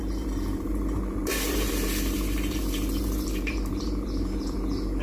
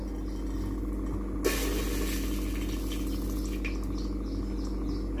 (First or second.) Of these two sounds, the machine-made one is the first